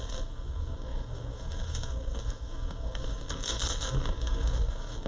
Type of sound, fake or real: fake